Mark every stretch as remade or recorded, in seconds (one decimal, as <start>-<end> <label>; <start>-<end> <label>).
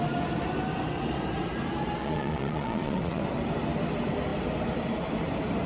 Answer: 0.0-2.0 recorded; 2.0-3.2 remade; 3.2-5.7 recorded